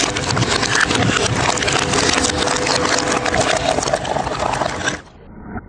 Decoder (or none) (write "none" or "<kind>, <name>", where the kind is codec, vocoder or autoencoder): none